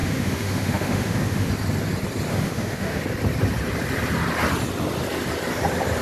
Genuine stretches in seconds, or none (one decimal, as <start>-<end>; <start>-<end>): 1.5-2.3; 3.0-6.0